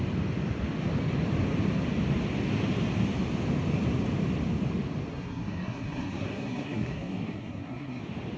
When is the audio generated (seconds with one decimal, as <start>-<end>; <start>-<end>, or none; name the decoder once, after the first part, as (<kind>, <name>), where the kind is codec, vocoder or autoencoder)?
5.1-8.0 (codec, SNAC)